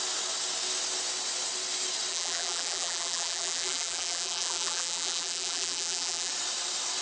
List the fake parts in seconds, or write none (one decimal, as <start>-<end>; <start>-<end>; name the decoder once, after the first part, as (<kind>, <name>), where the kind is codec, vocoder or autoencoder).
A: 2.1-6.3 (vocoder, BigVGAN v2)